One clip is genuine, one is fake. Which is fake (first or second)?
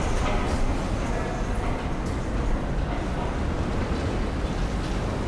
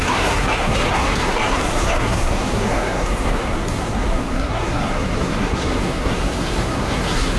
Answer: second